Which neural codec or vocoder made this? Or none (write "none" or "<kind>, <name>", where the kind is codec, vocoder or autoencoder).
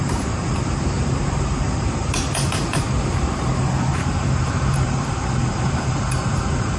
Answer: vocoder, BigVGAN v2